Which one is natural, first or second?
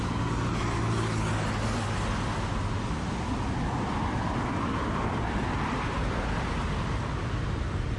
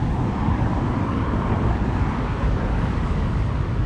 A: first